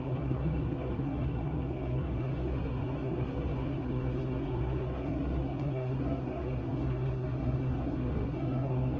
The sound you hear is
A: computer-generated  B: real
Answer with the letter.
A